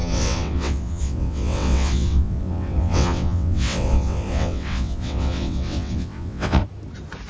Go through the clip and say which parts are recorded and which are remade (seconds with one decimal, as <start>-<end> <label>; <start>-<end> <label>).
0.0-6.6 remade; 6.6-7.3 recorded